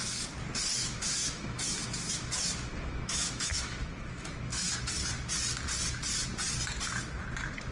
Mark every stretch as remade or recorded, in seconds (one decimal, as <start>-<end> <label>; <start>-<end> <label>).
0.0-0.8 recorded; 0.8-4.7 remade; 4.7-7.7 recorded